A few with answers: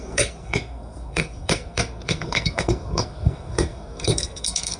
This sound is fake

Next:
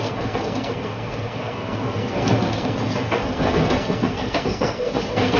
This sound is fake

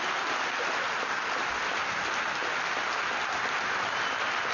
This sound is real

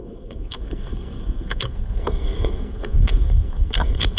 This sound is fake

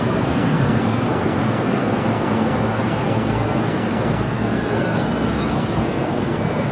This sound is fake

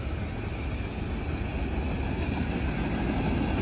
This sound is real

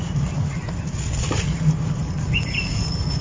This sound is real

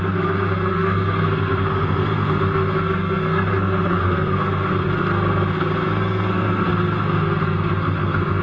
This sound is fake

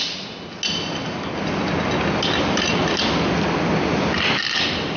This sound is real